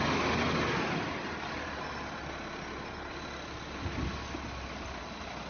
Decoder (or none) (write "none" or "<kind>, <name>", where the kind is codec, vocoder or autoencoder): none